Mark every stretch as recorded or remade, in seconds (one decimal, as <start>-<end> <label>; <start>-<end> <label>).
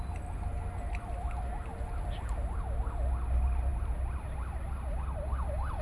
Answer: 0.0-5.8 recorded